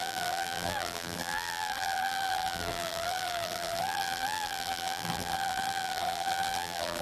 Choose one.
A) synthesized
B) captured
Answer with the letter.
A